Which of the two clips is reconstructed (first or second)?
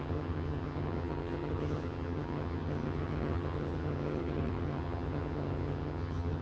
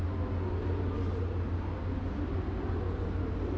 first